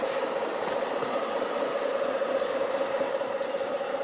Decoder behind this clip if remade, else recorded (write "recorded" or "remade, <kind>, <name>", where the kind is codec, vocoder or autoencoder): remade, vocoder, BigVGAN v2